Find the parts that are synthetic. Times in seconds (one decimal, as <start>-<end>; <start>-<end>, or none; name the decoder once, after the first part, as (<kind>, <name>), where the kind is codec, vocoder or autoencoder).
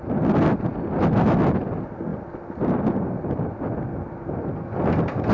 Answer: none